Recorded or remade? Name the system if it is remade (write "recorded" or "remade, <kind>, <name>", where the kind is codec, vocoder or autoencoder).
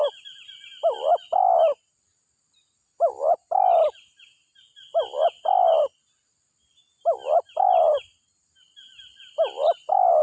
recorded